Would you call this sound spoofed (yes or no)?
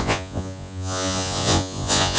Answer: yes